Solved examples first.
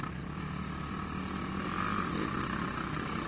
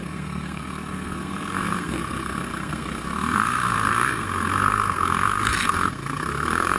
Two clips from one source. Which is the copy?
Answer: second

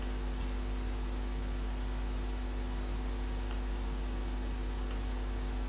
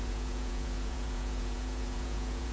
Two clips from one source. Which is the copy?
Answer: second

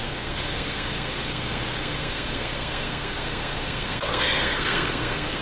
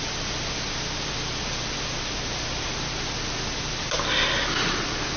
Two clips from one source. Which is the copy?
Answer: first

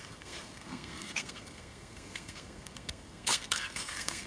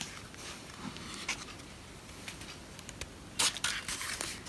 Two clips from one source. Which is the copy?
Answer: first